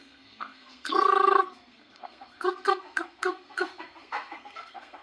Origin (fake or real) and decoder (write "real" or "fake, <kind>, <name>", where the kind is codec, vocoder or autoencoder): fake, codec, SNAC